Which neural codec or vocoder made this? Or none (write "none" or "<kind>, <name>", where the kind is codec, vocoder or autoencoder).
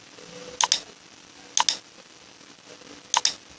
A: none